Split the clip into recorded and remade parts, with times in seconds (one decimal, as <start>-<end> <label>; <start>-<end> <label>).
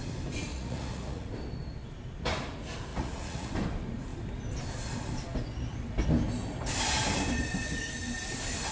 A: 0.0-0.5 recorded; 0.5-1.3 remade; 1.3-2.9 recorded; 2.9-3.5 remade; 3.5-8.7 recorded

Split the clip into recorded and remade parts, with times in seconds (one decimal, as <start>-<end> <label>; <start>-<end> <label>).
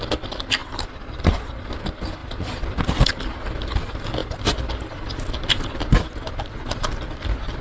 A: 0.0-0.6 recorded; 0.6-1.5 remade; 1.5-2.2 recorded; 2.2-3.1 remade; 3.1-4.2 recorded; 4.2-7.6 remade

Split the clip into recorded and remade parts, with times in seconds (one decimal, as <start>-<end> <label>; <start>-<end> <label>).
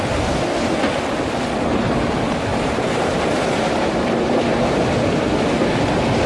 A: 0.0-2.5 recorded; 2.5-3.7 remade; 3.7-6.3 recorded